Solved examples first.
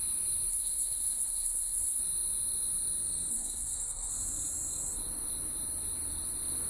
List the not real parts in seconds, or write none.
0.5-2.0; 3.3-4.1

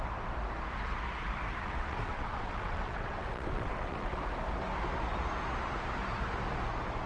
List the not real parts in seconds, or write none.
1.6-4.2

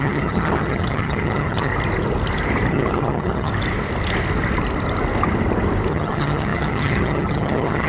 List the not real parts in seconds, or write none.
0.0-1.7; 2.7-3.5; 5.9-7.9

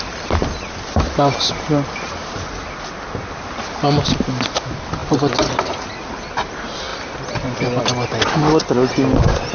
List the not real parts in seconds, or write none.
none